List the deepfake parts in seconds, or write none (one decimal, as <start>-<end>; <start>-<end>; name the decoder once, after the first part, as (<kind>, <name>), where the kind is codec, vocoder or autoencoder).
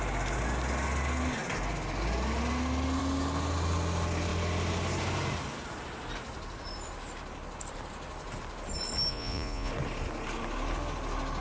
9.1-9.7 (vocoder, Vocos)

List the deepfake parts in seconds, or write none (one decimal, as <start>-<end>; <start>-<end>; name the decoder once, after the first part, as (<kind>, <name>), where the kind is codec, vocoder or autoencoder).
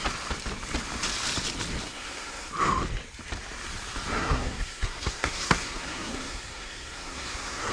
1.8-2.5 (codec, SNAC); 4.1-7.7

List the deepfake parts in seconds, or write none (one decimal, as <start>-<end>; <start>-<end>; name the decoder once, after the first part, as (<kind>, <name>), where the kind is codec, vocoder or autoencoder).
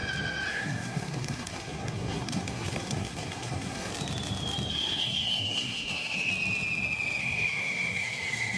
0.5-3.9 (codec, SNAC); 4.7-6.3; 7.2-8.6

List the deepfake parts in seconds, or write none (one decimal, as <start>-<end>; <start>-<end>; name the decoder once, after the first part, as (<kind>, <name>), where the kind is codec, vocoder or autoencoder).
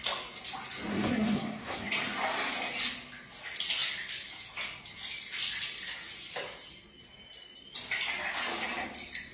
0.9-1.9 (codec, SNAC)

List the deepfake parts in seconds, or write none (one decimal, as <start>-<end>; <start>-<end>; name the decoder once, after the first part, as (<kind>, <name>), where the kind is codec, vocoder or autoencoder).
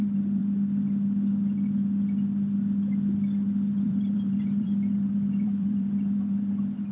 0.0-0.4 (vocoder, BigVGAN v2); 3.7-6.9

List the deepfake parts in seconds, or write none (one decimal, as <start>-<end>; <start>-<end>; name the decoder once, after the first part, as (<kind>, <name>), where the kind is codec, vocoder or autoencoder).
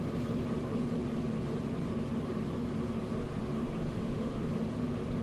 3.4-4.5 (autoencoder, DAC-VAE)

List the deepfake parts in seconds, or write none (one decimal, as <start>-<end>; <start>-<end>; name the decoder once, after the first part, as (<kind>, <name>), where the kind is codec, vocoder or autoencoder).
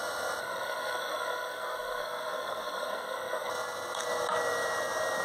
0.4-3.5 (codec, SNAC)